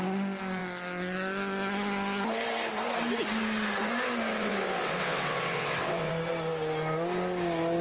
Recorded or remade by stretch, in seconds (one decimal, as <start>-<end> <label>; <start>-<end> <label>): 0.0-4.3 recorded; 4.3-6.1 remade; 6.1-7.8 recorded